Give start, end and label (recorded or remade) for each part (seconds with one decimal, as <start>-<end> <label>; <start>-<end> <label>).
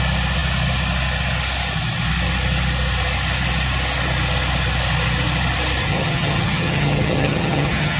0.0-5.8 recorded; 5.8-8.0 remade